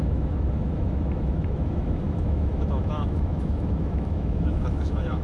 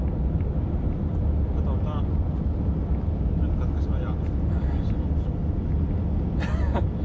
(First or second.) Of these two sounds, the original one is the second